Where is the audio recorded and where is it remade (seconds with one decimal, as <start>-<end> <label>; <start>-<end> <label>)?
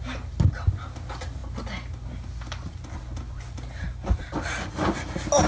0.0-5.5 recorded